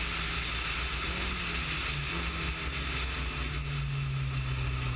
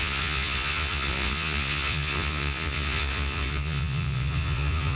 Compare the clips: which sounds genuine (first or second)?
first